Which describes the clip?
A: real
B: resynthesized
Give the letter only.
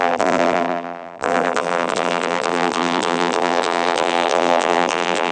B